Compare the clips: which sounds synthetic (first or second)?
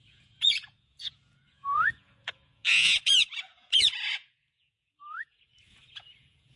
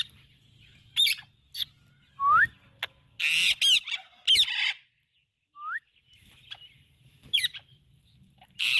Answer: first